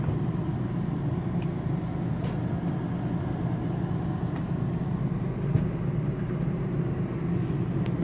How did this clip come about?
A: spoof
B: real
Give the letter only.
B